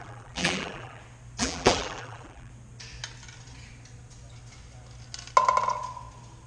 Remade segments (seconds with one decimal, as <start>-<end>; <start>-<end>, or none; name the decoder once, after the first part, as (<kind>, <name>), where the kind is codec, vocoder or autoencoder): 0.0-1.0 (vocoder, BigVGAN v2); 1.4-2.5

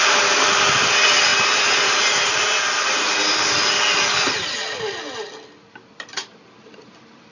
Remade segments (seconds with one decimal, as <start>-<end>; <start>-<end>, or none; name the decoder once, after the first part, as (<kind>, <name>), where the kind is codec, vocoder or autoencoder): 0.0-1.3 (vocoder, BigVGAN v2); 5.7-7.3

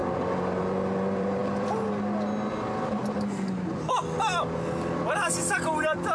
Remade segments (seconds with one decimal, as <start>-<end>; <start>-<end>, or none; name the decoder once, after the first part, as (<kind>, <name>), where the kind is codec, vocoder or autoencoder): 0.6-1.4 (vocoder, BigVGAN v2); 5.1-6.1